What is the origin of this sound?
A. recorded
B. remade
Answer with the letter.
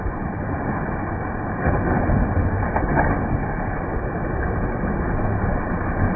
A